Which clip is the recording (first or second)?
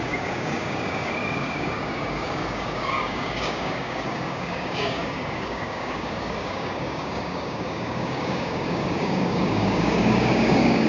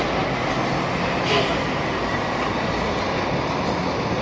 second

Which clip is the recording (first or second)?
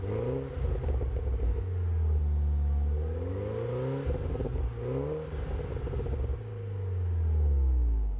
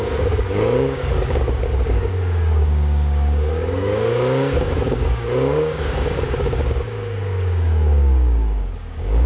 first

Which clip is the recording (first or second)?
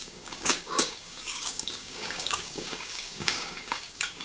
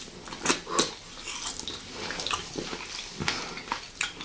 second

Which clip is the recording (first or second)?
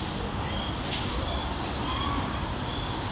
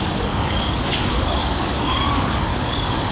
first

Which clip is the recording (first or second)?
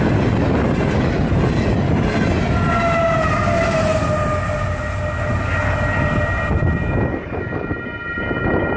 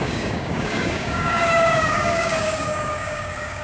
first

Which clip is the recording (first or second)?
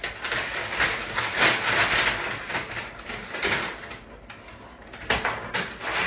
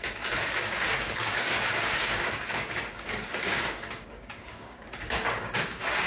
first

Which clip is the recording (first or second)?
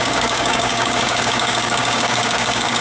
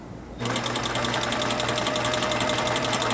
second